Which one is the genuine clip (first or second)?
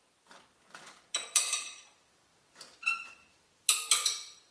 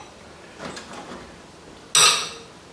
second